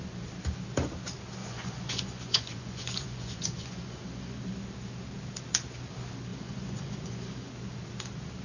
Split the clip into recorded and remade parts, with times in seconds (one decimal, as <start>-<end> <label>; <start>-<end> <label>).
0.0-1.4 recorded; 1.4-4.4 remade; 4.4-6.3 recorded; 6.3-7.5 remade; 7.5-8.4 recorded